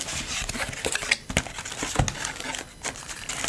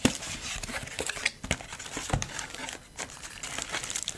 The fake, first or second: second